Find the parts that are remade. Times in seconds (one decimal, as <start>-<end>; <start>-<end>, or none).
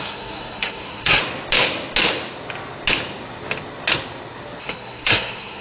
0.0-1.2; 4.6-5.6